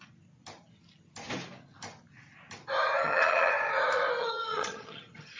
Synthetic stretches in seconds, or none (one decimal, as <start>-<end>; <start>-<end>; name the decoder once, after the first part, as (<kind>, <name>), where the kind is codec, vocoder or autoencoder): 3.0-3.5 (vocoder, HiFi-GAN); 4.2-5.4

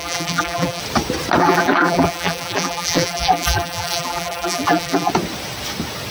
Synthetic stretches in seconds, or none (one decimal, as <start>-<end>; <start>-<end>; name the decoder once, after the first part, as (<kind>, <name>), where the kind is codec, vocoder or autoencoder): 0.0-0.8 (vocoder, BigVGAN v2); 1.4-5.1